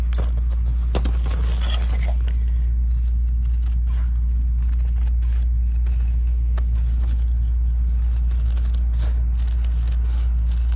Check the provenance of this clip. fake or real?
real